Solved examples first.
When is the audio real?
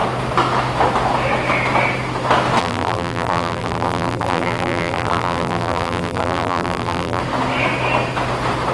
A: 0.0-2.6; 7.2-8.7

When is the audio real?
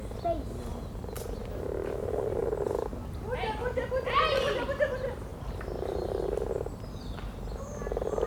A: 0.0-0.7; 2.0-5.3; 6.2-8.3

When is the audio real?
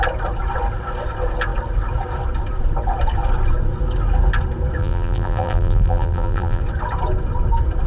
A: 0.0-4.8; 6.6-7.9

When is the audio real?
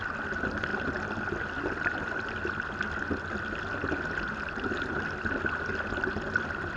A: 0.0-6.8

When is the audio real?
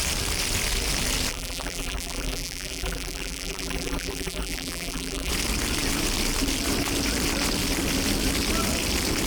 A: 0.0-1.3; 5.3-9.3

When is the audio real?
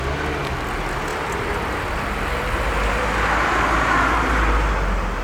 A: 0.0-1.1; 3.0-5.2